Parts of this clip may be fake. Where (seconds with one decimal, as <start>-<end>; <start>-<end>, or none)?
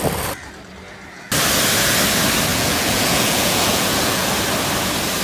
2.5-4.3